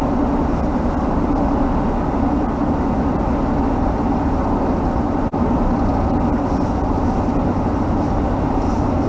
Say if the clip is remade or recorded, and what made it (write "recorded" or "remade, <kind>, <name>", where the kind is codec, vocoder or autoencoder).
recorded